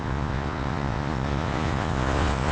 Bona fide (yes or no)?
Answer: no